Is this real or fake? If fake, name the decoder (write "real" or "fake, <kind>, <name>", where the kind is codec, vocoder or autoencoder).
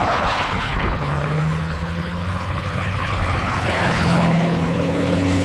fake, codec, HILCodec